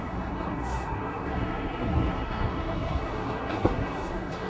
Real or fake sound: fake